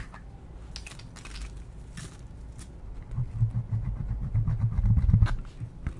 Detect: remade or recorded recorded